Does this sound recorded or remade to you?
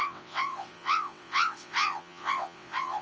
remade